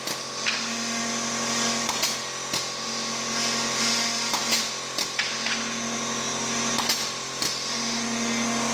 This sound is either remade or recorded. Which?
recorded